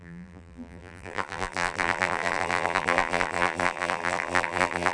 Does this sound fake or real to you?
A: fake